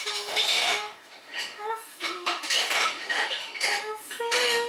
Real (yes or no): no